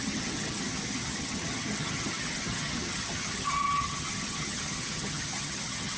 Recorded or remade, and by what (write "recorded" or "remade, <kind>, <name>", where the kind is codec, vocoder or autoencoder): remade, vocoder, HiFi-GAN